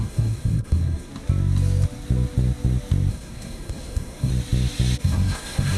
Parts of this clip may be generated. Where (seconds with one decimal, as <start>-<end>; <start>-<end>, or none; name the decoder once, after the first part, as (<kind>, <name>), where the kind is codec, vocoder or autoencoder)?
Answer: 0.0-1.1 (codec, SNAC); 3.1-4.3; 5.0-5.8